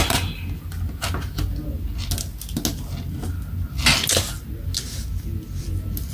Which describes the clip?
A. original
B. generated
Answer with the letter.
A